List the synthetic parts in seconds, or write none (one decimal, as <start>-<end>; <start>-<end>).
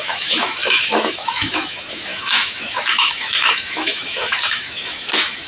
0.0-5.5